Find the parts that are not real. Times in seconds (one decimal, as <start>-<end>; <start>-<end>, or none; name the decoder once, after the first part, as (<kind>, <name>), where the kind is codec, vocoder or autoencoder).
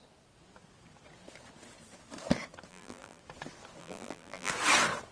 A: 2.7-3.2 (vocoder, BigVGAN v2); 3.8-4.5